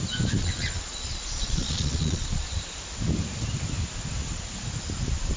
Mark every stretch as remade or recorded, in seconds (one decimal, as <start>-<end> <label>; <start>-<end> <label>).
0.0-0.4 recorded; 0.4-2.4 remade; 2.4-5.4 recorded